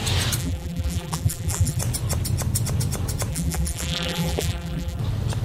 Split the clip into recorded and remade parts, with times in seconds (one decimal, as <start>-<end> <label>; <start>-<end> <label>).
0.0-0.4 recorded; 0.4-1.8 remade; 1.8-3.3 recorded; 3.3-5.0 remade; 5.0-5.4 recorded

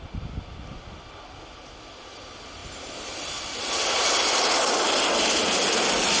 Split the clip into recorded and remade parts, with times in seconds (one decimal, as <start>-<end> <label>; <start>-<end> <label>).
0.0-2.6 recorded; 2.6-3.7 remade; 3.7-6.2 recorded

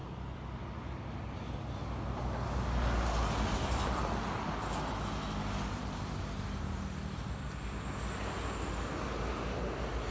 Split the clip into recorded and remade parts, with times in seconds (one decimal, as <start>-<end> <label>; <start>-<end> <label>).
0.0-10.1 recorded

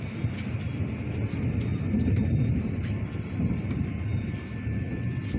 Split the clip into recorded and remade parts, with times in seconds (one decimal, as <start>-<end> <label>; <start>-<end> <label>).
0.0-1.7 recorded; 1.7-4.9 remade; 4.9-5.4 recorded

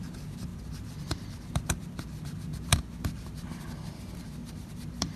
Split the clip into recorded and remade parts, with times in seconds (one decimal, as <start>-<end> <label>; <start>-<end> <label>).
0.0-0.5 recorded; 0.5-1.5 remade; 1.5-2.7 recorded; 2.7-3.4 remade; 3.4-4.4 recorded; 4.4-5.2 remade

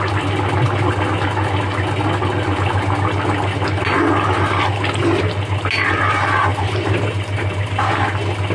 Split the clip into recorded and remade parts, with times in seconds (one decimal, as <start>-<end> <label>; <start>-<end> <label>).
0.0-6.5 recorded; 6.5-7.9 remade; 7.9-8.5 recorded